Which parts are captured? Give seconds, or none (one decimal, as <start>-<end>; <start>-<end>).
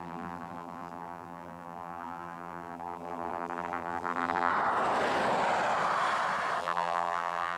4.5-6.6